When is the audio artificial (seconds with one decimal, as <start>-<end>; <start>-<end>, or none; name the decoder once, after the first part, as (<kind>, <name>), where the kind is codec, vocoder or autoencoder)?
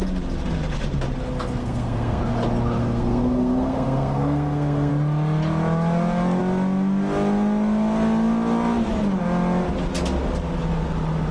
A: 1.6-2.2 (codec, SNAC); 2.8-4.9